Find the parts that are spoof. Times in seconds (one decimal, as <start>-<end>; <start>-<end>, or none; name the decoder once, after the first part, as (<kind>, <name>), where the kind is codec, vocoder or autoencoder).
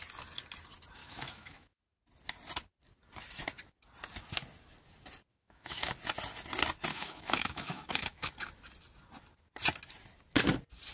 1.0-1.8 (autoencoder, DAC-VAE); 5.3-5.9; 6.9-8.3